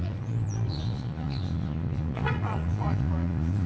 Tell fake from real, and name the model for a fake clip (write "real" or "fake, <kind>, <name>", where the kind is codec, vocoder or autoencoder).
fake, vocoder, Vocos